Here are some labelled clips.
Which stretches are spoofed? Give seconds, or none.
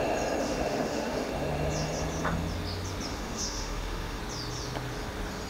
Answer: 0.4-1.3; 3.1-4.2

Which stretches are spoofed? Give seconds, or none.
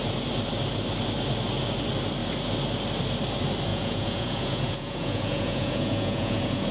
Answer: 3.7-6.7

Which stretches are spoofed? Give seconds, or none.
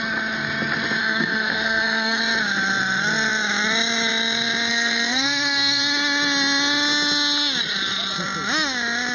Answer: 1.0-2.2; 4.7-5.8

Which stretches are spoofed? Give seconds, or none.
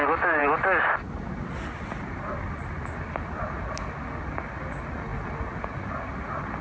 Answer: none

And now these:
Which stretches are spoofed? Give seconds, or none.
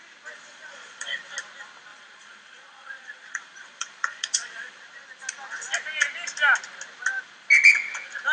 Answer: 0.5-1.2; 1.9-4.8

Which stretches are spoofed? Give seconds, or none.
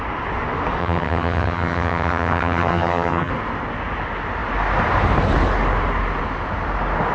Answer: 0.8-3.3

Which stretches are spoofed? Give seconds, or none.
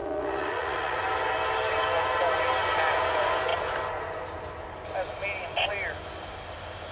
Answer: 0.0-1.0